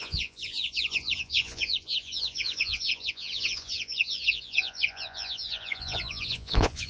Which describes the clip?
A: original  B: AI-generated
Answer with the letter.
B